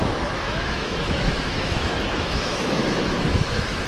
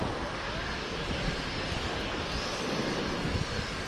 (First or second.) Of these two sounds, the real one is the second